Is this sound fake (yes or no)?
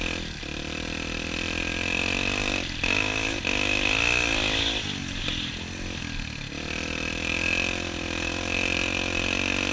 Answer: no